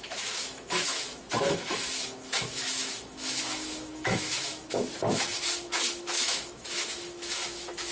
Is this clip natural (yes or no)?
no